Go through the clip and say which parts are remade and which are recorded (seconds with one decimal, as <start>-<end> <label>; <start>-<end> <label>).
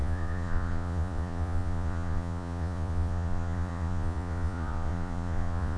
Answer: 0.0-5.8 remade